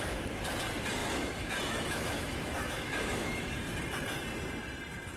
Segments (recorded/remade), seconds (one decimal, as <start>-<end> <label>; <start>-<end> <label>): 0.0-1.0 recorded; 1.0-3.5 remade; 3.5-5.2 recorded